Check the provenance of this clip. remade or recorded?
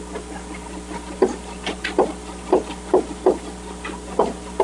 recorded